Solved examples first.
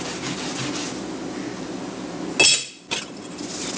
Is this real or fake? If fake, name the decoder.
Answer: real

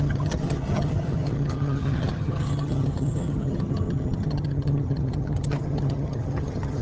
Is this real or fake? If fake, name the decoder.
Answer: fake, vocoder, HiFi-GAN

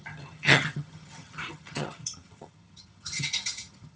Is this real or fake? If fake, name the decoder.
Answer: fake, vocoder, HiFi-GAN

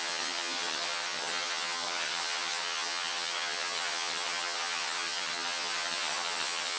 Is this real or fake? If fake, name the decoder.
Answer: fake, vocoder, HiFi-GAN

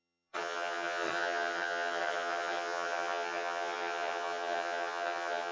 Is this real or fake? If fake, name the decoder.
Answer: fake, vocoder, HiFi-GAN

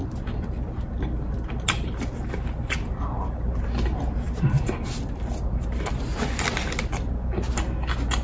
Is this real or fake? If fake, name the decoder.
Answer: real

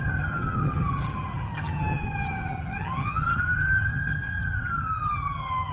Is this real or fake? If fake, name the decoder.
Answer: fake, vocoder, HiFi-GAN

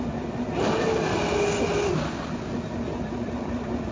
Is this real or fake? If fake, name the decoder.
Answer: real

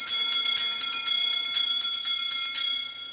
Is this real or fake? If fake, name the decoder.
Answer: real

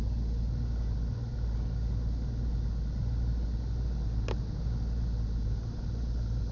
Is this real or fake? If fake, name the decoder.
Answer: real